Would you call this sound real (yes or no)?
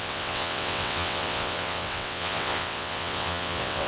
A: no